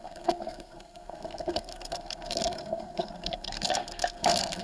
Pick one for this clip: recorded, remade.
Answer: remade